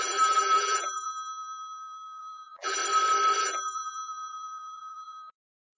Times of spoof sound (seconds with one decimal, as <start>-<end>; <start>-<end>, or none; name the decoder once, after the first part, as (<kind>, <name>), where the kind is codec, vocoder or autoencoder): 0.0-1.1 (vocoder, BigVGAN v2); 2.2-2.8; 3.4-5.8